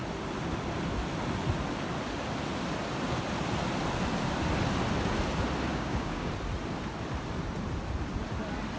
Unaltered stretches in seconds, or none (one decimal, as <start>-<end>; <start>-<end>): 0.0-5.7; 6.3-8.8